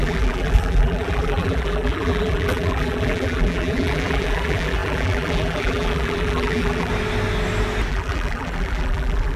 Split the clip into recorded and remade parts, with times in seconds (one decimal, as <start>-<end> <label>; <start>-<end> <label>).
0.0-6.9 remade; 6.9-7.9 recorded; 7.9-9.4 remade